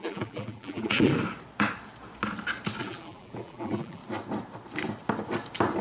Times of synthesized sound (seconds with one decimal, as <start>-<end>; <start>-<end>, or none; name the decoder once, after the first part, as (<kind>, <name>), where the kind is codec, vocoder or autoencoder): 0.0-1.1 (vocoder, BigVGAN v2); 2.8-4.0